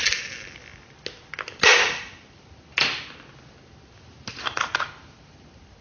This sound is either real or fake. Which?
real